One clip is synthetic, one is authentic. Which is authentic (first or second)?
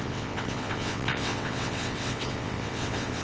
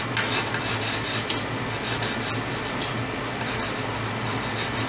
second